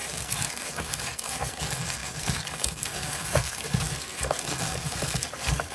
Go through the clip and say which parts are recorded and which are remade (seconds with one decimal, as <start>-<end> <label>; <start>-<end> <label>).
0.0-5.7 remade